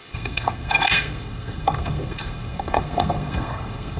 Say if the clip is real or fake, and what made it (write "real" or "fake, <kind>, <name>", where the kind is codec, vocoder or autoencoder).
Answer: fake, codec, SNAC